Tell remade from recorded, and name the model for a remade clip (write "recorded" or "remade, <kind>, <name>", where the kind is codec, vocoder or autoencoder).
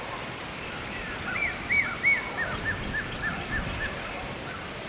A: remade, vocoder, BigVGAN v2